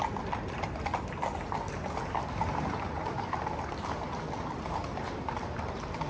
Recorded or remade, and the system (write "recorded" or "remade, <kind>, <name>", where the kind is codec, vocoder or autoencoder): recorded